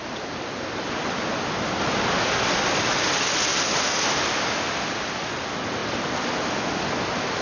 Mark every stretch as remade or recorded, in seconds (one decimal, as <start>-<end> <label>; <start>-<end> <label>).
0.0-7.4 recorded